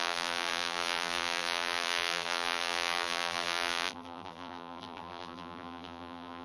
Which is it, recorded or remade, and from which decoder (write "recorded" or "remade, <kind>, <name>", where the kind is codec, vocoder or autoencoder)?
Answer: remade, vocoder, BigVGAN v2